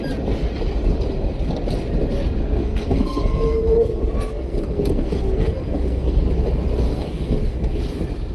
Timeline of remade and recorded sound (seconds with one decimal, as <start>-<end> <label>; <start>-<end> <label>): 0.0-2.4 recorded; 2.4-6.2 remade; 6.2-6.9 recorded; 6.9-7.8 remade; 7.8-8.3 recorded